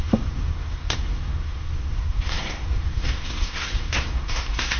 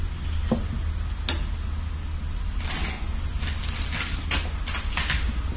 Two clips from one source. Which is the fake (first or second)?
first